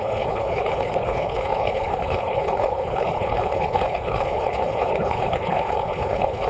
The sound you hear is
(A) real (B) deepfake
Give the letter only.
B